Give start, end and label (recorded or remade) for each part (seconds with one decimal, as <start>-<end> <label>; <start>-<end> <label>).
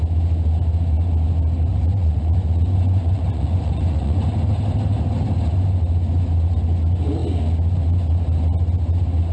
0.0-1.7 recorded; 1.7-4.2 remade; 4.2-9.3 recorded